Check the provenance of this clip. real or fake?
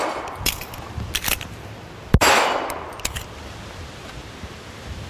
real